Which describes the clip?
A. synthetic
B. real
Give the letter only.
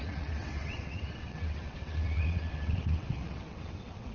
A